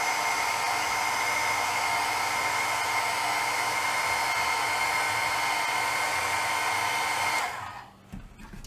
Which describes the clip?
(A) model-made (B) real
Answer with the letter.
B